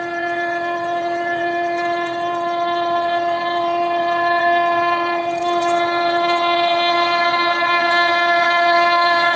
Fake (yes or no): yes